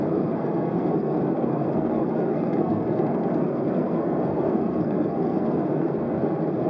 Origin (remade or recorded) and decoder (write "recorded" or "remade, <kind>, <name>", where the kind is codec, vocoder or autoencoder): remade, codec, SNAC